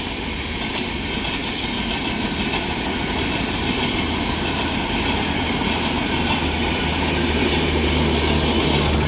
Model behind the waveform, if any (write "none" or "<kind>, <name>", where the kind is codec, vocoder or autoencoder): none